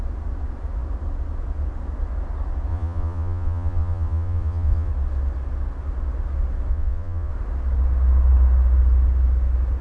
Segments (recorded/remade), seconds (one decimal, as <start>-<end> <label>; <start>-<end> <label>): 0.0-2.7 recorded; 2.7-4.9 remade; 4.9-6.7 recorded; 6.7-7.3 remade; 7.3-9.8 recorded